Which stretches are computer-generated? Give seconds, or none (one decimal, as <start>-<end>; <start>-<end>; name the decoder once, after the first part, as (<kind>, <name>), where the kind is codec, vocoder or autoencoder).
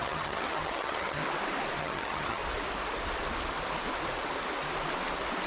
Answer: 0.0-1.2 (vocoder, HiFi-GAN); 1.8-2.4